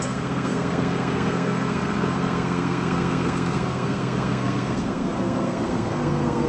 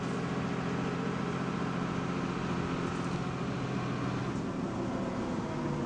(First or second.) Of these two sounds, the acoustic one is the second